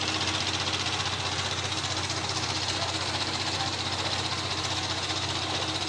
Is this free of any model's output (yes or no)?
yes